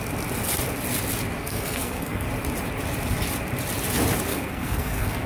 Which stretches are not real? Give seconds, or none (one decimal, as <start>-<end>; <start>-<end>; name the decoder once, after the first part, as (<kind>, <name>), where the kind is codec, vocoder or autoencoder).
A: 1.4-2.3 (codec, SNAC); 4.3-5.3